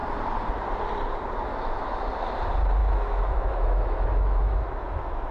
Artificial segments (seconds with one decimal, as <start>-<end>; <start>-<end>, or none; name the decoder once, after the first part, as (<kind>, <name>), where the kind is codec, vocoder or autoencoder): 1.5-2.0 (autoencoder, DAC-VAE); 2.8-5.3